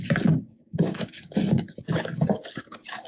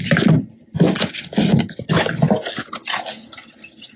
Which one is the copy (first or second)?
first